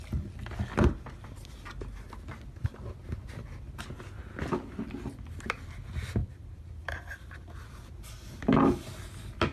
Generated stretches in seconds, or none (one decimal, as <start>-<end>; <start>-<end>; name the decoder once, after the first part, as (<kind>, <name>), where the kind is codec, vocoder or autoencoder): 6.2-7.5 (vocoder, BigVGAN v2)